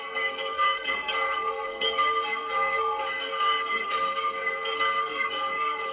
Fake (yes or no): yes